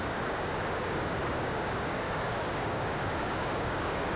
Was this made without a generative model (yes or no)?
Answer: no